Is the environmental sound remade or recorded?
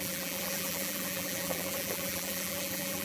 remade